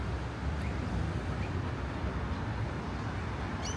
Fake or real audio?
real